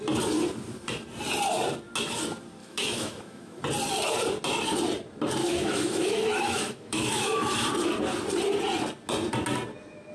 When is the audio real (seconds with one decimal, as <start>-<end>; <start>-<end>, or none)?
0.0-2.6; 3.6-5.4; 7.7-10.1